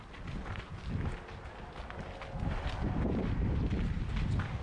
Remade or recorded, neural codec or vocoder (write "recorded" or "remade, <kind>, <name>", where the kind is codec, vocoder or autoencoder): remade, vocoder, BigVGAN v2